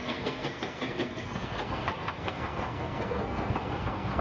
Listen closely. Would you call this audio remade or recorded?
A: remade